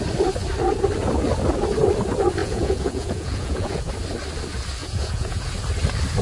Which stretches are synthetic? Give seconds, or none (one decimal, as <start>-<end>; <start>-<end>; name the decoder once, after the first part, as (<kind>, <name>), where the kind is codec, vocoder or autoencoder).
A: 2.4-3.9 (vocoder, Vocos); 4.8-5.5